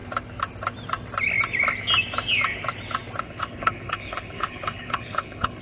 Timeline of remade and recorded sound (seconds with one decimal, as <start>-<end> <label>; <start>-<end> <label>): 0.0-3.2 recorded; 3.2-5.6 remade